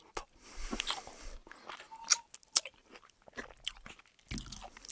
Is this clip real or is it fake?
real